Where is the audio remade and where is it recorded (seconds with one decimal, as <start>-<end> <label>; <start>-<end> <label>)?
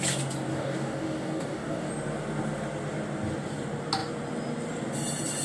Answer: 0.0-0.5 recorded; 0.5-1.9 remade; 1.9-5.4 recorded